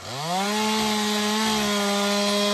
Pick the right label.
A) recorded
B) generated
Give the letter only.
A